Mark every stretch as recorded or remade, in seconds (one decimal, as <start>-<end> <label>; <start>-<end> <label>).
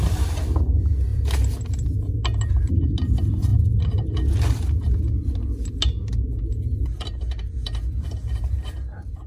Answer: 0.0-9.3 recorded